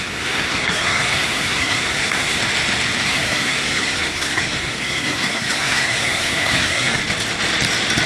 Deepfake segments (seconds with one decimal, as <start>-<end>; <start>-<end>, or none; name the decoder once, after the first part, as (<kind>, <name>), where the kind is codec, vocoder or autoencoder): 0.0-2.4 (codec, SNAC); 3.0-7.0